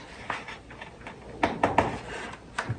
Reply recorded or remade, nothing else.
recorded